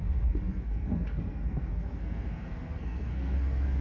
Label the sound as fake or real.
fake